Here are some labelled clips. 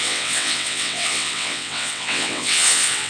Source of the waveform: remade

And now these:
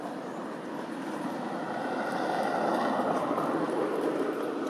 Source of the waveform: recorded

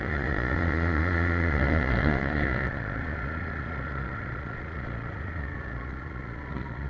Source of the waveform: remade